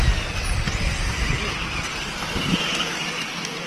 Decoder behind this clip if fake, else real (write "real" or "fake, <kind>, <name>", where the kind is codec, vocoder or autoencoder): real